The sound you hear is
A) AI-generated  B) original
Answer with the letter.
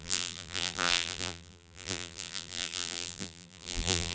A